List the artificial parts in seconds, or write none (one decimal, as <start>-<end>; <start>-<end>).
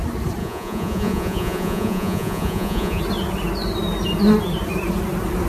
0.4-3.0